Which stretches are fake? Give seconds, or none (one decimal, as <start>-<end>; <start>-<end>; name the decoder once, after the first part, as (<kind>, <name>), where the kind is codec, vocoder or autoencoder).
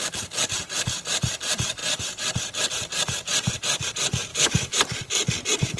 4.3-4.8 (autoencoder, DAC-VAE)